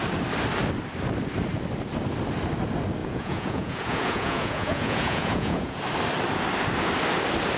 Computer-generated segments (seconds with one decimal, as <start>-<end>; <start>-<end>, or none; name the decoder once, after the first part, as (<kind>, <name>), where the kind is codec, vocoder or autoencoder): 3.0-5.8 (vocoder, Vocos)